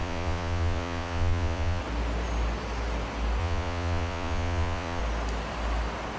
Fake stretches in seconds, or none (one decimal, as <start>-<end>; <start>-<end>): 0.0-1.8; 3.4-5.0